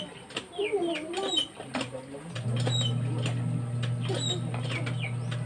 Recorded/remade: recorded